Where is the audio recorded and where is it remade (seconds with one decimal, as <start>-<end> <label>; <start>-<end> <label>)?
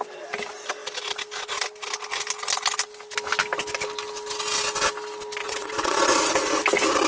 0.0-5.4 recorded; 5.4-6.0 remade; 6.0-7.1 recorded